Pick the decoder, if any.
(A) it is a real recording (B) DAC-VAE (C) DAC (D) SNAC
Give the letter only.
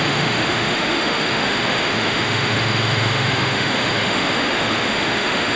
B